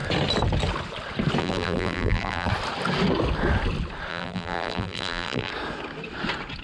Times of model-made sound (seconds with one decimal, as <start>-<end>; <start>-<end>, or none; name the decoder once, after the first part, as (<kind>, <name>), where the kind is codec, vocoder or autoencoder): 1.4-2.5 (vocoder, BigVGAN v2); 4.1-5.5